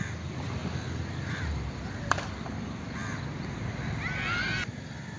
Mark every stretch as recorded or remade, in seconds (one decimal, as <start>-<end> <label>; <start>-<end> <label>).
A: 0.0-0.6 remade; 0.6-1.3 recorded; 1.3-3.0 remade; 3.0-5.2 recorded